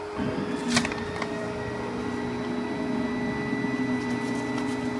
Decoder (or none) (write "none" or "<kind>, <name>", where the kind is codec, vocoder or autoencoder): none